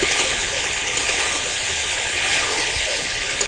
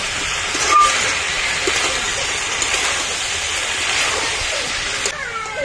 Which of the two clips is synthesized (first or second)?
first